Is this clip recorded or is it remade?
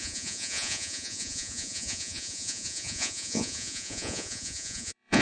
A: remade